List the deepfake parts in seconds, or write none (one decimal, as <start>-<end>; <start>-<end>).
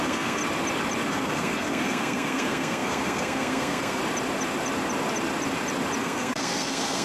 0.0-0.4; 1.1-4.0; 6.0-7.0